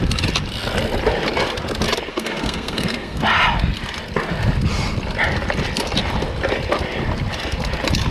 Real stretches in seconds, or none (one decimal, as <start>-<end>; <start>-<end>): 0.0-2.1; 3.2-8.1